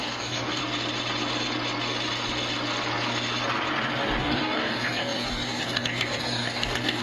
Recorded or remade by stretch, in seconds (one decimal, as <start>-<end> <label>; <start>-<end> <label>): 0.0-0.6 remade; 0.6-4.2 recorded; 4.2-7.0 remade